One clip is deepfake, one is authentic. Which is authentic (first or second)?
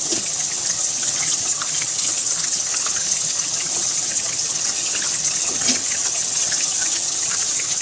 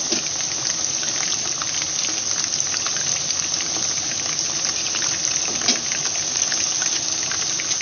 second